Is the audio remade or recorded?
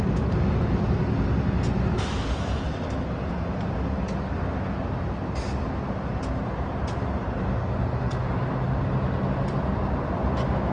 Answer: recorded